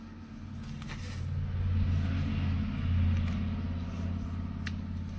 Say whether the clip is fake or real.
real